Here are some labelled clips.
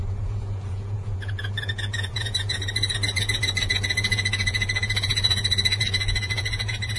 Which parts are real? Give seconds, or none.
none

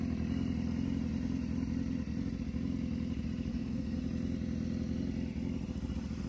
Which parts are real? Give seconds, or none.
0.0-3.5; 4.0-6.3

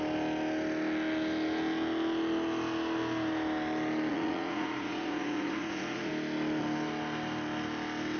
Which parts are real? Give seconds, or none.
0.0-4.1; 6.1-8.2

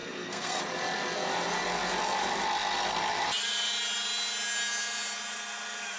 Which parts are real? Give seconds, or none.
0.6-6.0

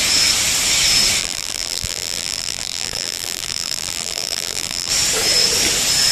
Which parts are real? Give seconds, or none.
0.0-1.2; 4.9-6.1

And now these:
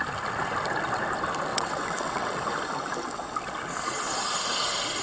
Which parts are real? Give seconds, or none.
0.0-1.5; 2.4-5.0

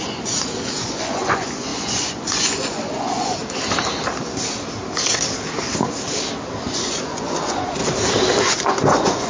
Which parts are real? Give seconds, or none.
3.4-6.6; 7.8-8.4

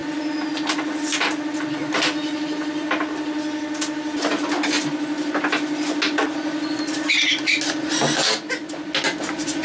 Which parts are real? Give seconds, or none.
0.0-9.6